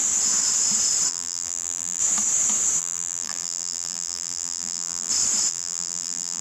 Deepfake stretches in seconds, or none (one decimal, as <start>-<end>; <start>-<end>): 1.1-2.0; 2.8-5.1; 5.5-6.4